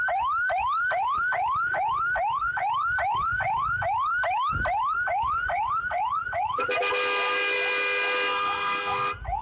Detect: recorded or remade recorded